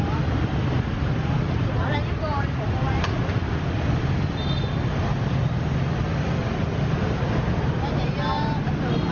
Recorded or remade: recorded